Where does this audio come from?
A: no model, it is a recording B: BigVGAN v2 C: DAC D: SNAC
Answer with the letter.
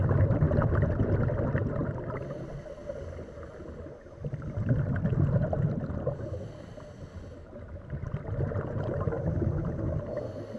A